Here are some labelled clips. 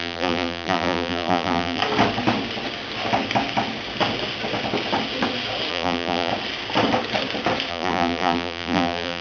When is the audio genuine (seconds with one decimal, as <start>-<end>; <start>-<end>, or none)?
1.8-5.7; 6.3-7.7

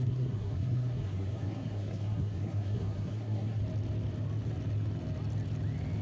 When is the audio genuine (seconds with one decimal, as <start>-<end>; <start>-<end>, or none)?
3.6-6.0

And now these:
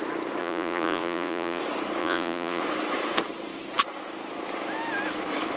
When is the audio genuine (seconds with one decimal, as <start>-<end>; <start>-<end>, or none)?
0.0-0.4; 1.6-2.0; 2.6-5.6

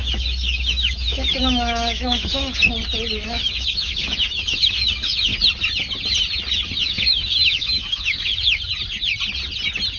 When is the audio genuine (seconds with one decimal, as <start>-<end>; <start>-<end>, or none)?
2.6-3.1; 5.3-6.8; 8.3-10.0

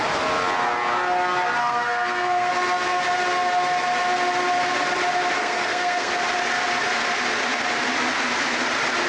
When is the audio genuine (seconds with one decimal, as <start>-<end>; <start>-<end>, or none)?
0.0-1.6; 2.5-5.4; 6.1-9.1

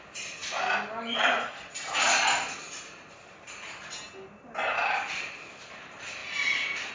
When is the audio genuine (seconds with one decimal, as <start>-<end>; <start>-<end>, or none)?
0.0-6.9

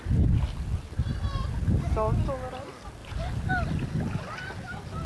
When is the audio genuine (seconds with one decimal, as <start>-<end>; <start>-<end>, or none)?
0.0-5.1

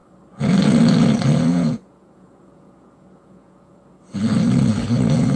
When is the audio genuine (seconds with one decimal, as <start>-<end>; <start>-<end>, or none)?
0.0-1.5; 3.8-5.4